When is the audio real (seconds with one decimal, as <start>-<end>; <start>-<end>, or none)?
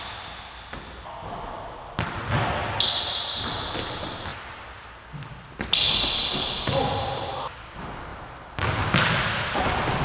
0.0-10.0